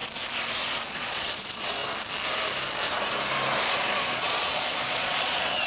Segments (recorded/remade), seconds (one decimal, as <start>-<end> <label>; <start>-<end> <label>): 0.0-0.9 recorded; 0.9-1.8 remade; 1.8-3.6 recorded; 3.6-5.7 remade